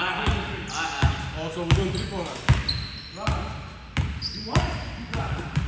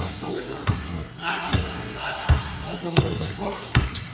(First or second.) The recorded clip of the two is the first